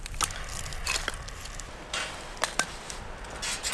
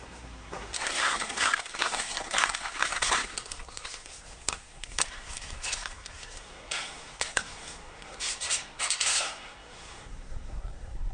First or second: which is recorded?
first